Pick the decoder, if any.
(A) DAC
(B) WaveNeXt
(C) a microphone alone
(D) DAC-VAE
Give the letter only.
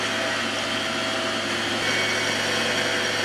C